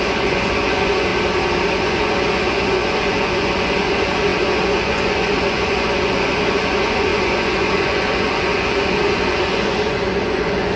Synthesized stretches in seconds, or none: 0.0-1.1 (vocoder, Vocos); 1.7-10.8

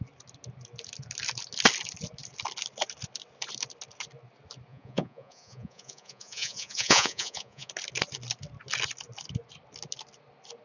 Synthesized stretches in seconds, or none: 4.7-7.7 (vocoder, Vocos)

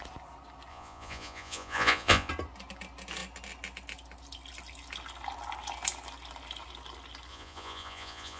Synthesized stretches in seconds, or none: 0.7-2.3 (vocoder, Vocos); 7.3-8.4

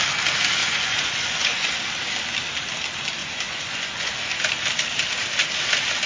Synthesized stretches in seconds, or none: 0.6-1.7 (vocoder, Vocos); 3.2-4.3